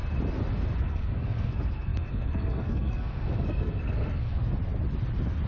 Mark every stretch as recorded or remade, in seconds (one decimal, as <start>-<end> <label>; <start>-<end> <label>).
0.0-0.8 recorded; 0.8-4.4 remade; 4.4-5.5 recorded